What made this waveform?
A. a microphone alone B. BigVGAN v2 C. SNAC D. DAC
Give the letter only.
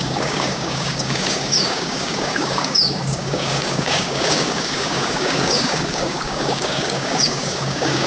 D